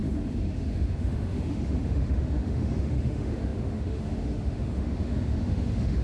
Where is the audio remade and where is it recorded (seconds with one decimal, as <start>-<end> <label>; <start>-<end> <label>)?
0.0-6.0 remade